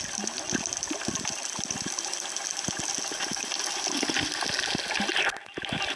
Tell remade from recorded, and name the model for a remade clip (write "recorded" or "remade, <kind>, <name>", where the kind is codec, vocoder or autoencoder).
recorded